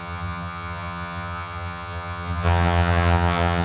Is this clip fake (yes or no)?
yes